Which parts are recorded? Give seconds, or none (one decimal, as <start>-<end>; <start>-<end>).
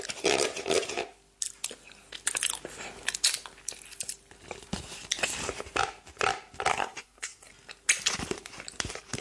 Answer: 0.0-6.7; 7.5-9.2